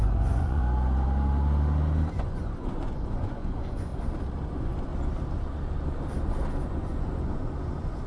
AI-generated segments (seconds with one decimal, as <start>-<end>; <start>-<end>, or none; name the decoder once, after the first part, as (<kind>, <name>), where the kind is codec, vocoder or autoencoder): 0.0-0.6 (vocoder, Vocos); 2.1-3.9; 4.5-4.9; 6.6-8.1